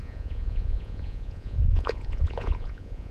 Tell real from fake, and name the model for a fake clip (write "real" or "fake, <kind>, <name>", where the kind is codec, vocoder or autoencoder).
fake, vocoder, Vocos